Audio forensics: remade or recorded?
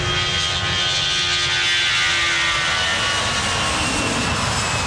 recorded